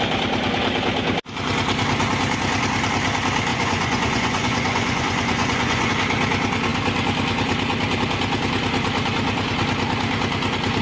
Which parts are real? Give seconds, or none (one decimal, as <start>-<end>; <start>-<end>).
0.0-3.5; 5.9-10.8